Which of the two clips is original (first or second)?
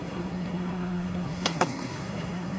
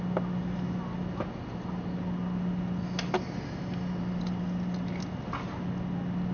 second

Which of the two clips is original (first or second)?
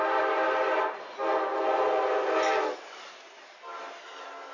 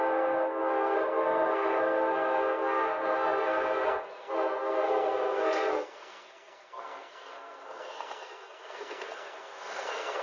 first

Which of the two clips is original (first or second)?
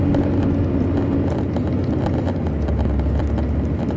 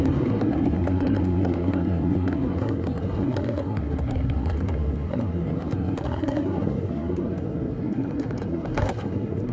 first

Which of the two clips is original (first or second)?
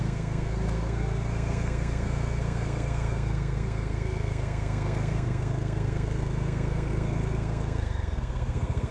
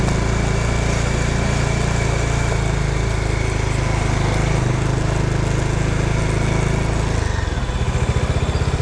second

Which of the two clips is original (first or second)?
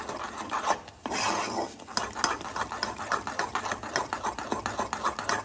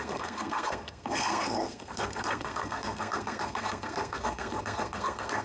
first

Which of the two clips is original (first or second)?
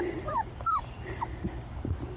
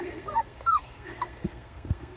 first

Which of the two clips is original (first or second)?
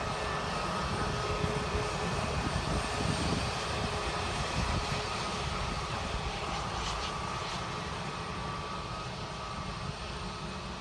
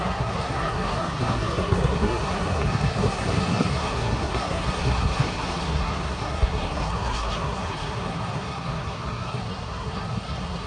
first